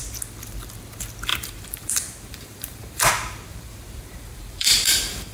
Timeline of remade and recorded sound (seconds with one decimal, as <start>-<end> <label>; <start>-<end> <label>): 0.0-1.3 recorded; 1.3-3.1 remade; 3.1-3.5 recorded; 3.5-5.3 remade